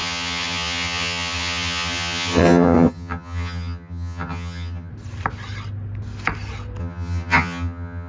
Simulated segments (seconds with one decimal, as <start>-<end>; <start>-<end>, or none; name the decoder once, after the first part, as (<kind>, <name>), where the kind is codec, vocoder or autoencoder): 0.0-4.9 (vocoder, HiFi-GAN); 6.8-8.1